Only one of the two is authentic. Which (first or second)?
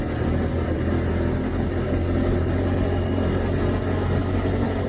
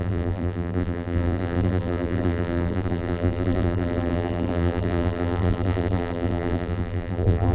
first